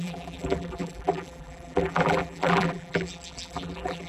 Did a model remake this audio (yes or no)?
yes